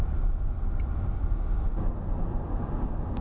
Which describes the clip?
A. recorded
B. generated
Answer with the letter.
A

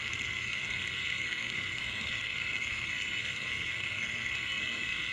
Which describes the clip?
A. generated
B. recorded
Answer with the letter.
A